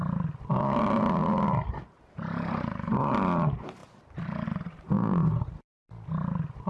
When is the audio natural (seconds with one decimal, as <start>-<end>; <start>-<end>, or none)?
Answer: 0.0-6.7